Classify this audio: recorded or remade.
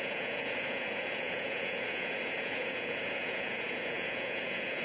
remade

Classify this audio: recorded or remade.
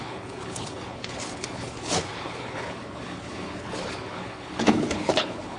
remade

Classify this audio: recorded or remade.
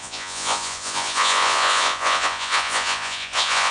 remade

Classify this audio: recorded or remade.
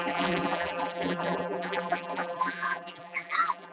remade